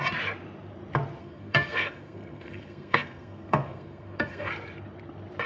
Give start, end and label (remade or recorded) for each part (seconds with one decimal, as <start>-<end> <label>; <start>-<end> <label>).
0.0-1.2 recorded; 1.2-4.5 remade; 4.5-5.5 recorded